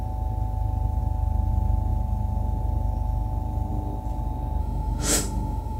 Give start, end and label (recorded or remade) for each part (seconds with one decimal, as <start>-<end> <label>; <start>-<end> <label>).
0.0-4.6 recorded; 4.6-5.8 remade